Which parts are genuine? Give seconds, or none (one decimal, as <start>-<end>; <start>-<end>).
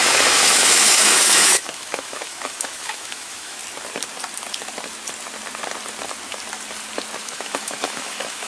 3.6-7.2